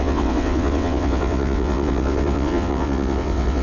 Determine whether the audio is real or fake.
fake